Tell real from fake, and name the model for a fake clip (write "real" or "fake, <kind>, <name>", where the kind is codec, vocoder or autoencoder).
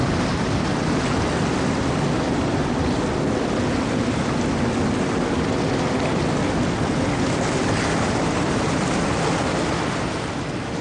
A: real